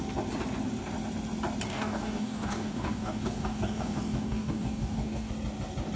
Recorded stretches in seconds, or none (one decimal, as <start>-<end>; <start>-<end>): 0.0-1.7; 5.3-6.0